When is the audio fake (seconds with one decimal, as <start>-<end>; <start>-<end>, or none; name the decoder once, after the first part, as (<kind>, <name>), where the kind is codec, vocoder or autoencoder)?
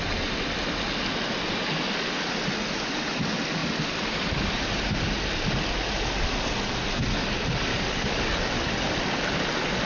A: 7.7-8.6 (codec, DAC)